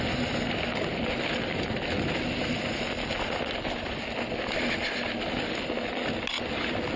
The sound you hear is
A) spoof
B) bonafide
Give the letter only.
B